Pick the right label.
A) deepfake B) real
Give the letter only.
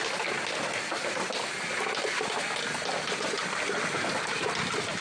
B